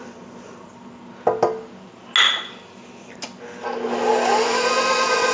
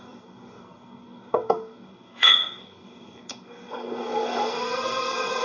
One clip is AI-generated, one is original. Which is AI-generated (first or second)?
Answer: second